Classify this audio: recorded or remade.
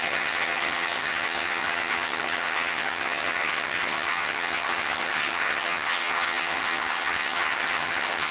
remade